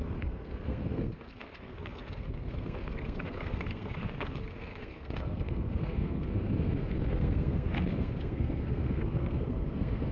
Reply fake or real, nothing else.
fake